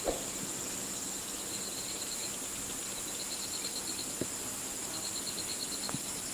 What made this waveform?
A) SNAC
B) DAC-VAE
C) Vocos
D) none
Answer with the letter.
D